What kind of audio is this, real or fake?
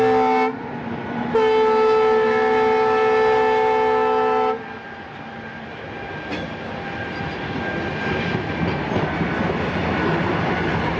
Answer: real